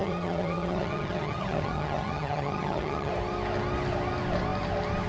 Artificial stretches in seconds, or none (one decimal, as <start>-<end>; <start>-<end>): 0.0-3.1